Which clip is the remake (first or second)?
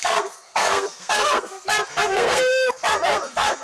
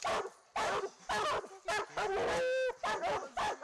first